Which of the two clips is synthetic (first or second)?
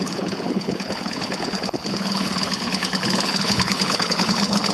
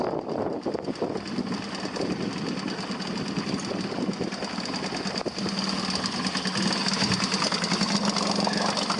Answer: first